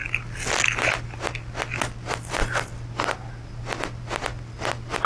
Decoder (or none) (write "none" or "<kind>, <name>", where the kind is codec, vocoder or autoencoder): none